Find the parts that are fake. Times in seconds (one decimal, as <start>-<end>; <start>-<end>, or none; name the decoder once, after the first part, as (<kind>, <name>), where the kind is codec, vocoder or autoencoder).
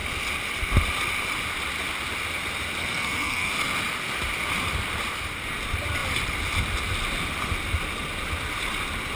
2.8-3.5 (codec, SNAC)